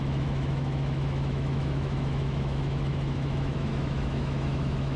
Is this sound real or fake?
fake